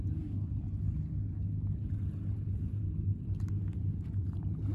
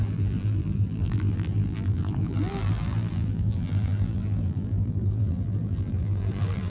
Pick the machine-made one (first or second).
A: second